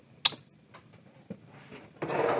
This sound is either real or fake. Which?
real